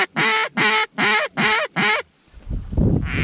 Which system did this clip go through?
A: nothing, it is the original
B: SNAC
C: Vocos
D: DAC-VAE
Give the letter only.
A